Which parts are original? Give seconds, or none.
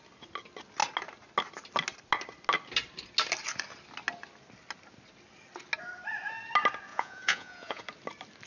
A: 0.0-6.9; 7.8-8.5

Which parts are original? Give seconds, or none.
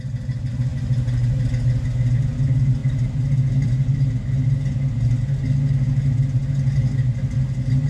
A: 0.0-7.9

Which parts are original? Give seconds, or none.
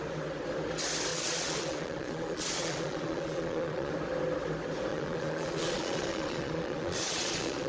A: 0.0-1.1; 3.9-4.9